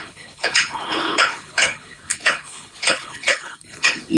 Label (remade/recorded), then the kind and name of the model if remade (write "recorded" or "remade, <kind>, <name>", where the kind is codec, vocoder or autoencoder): remade, codec, HILCodec